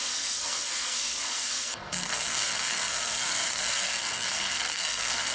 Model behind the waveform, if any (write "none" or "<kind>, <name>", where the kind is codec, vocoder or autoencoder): codec, SNAC